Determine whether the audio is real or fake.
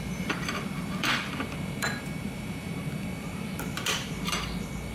fake